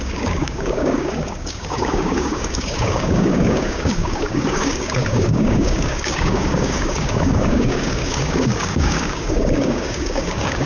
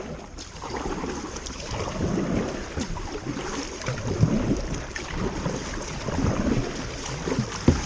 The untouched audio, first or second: second